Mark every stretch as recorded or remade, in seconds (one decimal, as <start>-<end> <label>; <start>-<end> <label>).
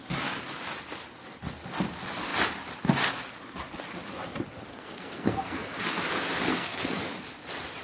0.0-4.7 recorded; 4.7-5.8 remade; 5.8-6.5 recorded; 6.5-7.0 remade; 7.0-7.8 recorded